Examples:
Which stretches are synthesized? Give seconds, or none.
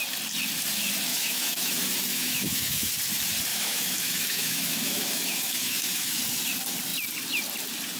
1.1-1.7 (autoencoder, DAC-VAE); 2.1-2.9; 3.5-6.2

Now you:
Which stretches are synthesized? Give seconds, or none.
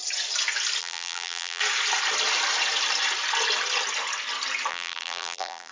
0.8-1.6 (vocoder, BigVGAN v2); 4.7-5.7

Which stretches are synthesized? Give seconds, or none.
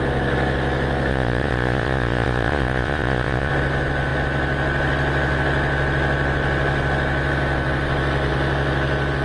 1.1-3.5 (vocoder, Vocos)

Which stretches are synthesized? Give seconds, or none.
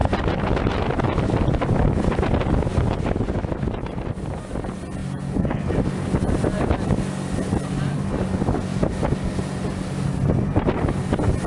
none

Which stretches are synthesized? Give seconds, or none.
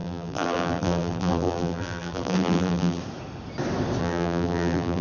0.0-3.0 (vocoder, BigVGAN v2); 4.0-5.0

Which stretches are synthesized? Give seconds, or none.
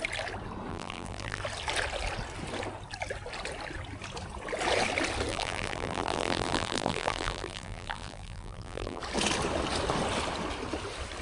0.7-1.4 (vocoder, BigVGAN v2); 5.3-9.0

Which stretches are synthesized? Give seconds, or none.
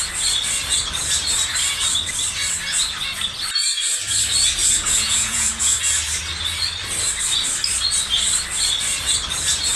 4.6-5.8 (vocoder, Vocos)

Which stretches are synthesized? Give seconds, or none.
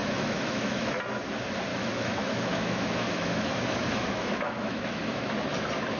0.0-1.0 (autoencoder, DAC-VAE); 1.7-5.3